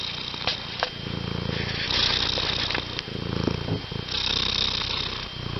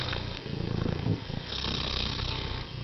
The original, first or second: first